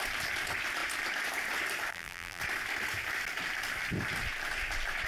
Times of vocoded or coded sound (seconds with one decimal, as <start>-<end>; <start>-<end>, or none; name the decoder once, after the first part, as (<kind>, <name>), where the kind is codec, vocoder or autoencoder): 1.9-2.4 (vocoder, BigVGAN v2)